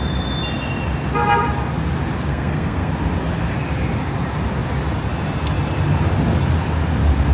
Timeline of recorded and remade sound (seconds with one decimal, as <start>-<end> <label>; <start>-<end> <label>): 0.0-2.3 recorded; 2.3-2.9 remade; 2.9-7.3 recorded